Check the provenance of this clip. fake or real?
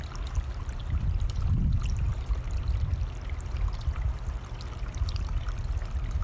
real